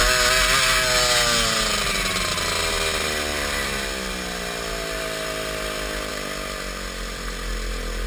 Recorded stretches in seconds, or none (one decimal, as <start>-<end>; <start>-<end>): 0.0-8.1